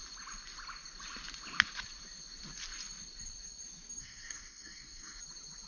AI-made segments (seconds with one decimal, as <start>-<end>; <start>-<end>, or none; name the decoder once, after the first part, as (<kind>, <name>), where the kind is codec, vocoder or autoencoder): 4.0-5.2 (codec, SNAC)